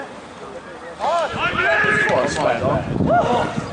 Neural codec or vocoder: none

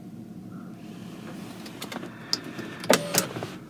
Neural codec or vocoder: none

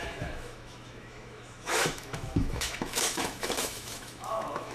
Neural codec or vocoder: autoencoder, DAC-VAE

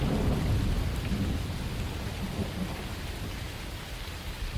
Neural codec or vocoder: none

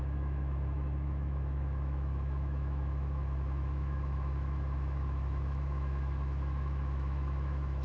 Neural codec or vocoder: autoencoder, DAC-VAE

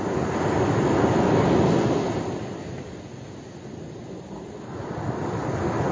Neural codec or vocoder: none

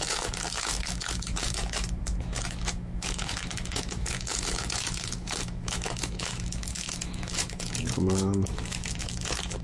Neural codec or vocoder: autoencoder, DAC-VAE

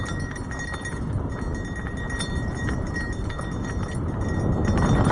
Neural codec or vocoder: none